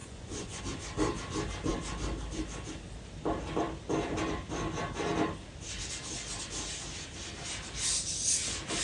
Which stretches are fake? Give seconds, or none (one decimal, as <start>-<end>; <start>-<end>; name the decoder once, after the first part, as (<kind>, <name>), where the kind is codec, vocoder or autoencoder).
0.0-0.6 (vocoder, Vocos)